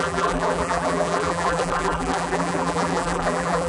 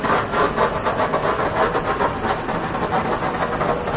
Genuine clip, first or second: second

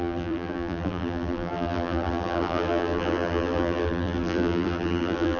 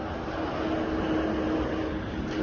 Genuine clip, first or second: second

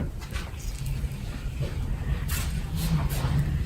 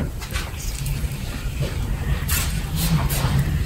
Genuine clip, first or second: first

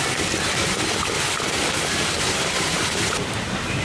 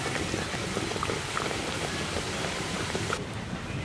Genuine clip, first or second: first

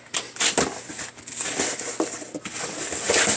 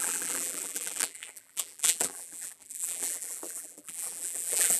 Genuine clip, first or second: first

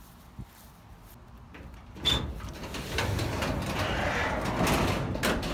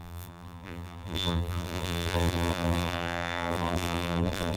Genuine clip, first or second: first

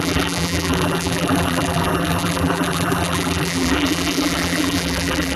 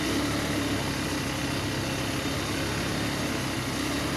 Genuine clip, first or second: second